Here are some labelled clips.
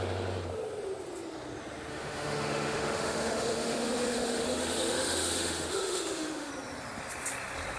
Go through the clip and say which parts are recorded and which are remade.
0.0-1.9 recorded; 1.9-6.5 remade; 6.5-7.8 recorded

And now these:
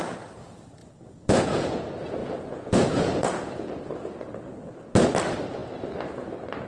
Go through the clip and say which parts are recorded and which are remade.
0.0-0.8 recorded; 0.8-1.8 remade; 1.8-2.2 recorded; 2.2-3.7 remade; 3.7-6.7 recorded

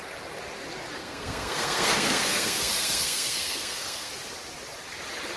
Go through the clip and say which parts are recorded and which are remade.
0.0-1.0 recorded; 1.0-4.1 remade; 4.1-5.4 recorded